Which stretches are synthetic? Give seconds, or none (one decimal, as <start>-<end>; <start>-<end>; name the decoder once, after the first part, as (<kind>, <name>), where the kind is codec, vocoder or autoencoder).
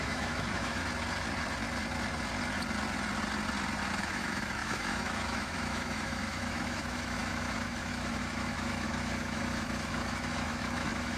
0.0-0.8 (autoencoder, DAC-VAE); 4.0-11.2